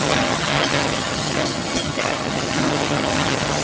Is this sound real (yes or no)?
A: no